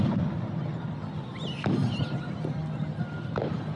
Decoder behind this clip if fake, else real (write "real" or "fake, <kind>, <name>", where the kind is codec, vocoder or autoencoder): real